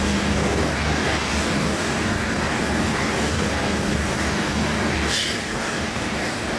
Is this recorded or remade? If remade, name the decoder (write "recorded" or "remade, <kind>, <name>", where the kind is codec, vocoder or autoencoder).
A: remade, codec, DAC